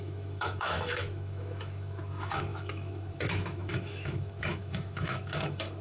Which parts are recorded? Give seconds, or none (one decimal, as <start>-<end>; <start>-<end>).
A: none